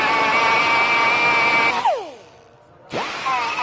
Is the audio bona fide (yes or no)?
yes